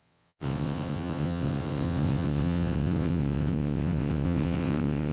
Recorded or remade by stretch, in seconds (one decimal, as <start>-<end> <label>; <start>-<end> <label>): 0.0-5.1 remade